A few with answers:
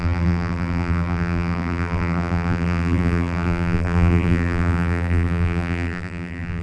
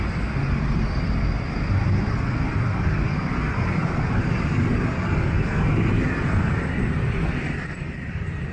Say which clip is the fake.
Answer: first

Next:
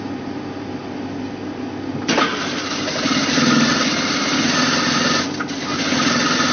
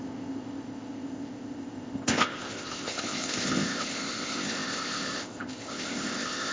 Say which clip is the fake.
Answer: second